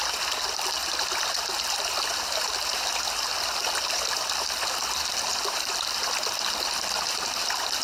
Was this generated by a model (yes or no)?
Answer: no